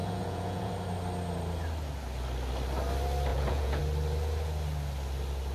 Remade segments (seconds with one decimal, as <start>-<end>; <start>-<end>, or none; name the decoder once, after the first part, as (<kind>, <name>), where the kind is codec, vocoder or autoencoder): 0.0-0.7 (vocoder, Vocos); 3.3-3.8